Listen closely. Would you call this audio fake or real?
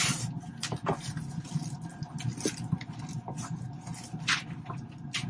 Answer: real